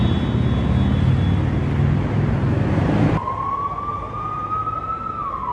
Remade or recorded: recorded